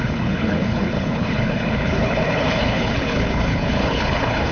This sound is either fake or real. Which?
fake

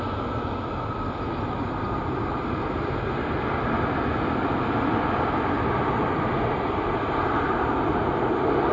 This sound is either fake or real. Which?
real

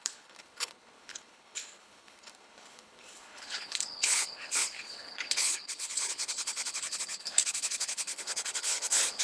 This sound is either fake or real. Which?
fake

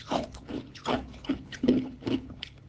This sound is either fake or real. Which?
fake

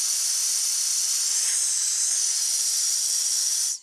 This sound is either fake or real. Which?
real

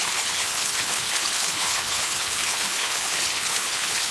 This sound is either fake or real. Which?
fake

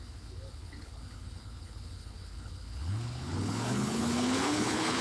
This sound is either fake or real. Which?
fake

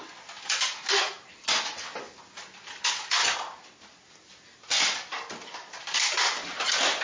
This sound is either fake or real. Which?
real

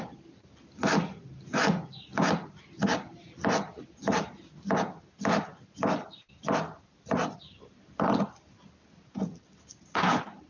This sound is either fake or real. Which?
real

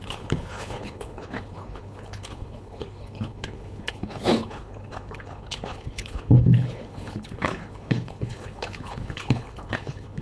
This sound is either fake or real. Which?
fake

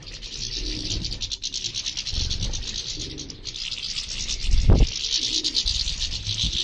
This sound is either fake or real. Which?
real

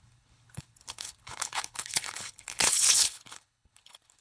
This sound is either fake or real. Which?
fake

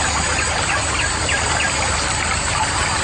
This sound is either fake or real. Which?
real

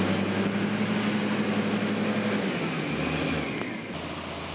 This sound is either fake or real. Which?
real